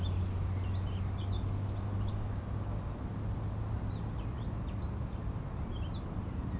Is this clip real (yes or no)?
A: yes